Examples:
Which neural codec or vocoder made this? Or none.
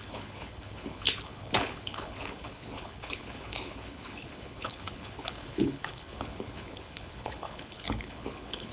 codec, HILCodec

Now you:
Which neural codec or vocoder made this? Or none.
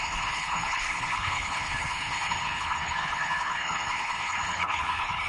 codec, HILCodec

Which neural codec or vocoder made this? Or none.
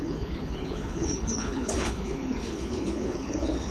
codec, HILCodec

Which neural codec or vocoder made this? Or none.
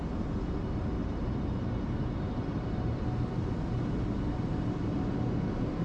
none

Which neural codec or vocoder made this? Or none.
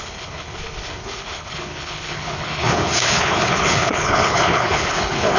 codec, HILCodec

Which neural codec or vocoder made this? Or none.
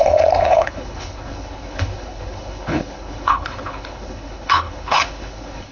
codec, HILCodec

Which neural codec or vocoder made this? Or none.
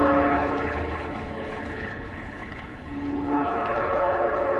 codec, HILCodec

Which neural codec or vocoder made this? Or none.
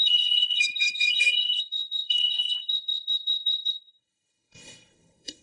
codec, HILCodec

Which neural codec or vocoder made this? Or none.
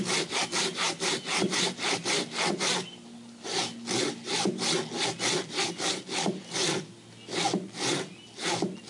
none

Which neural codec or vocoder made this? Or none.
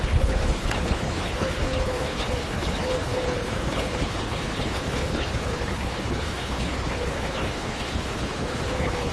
codec, HILCodec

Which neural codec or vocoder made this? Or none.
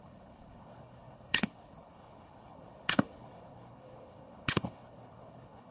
codec, HILCodec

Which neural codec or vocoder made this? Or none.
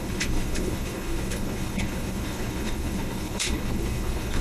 codec, HILCodec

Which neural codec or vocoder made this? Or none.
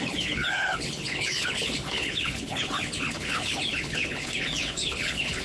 codec, HILCodec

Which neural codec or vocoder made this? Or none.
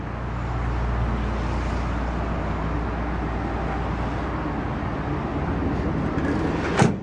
none